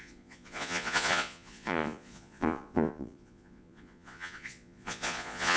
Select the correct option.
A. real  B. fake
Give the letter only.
B